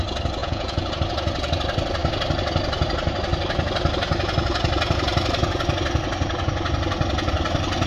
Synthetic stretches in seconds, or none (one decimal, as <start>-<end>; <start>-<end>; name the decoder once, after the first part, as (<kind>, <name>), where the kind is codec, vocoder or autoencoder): 0.4-0.9 (vocoder, Vocos)

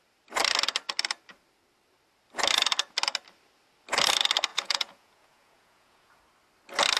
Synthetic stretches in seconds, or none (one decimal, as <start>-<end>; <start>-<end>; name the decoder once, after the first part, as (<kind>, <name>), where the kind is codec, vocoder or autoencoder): 4.5-6.2 (vocoder, Vocos)

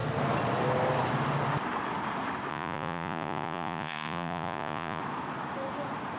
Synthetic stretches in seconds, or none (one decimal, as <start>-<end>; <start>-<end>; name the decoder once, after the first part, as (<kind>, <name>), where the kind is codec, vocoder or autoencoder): 2.5-5.0 (vocoder, Vocos)